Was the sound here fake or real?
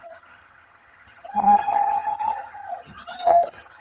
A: fake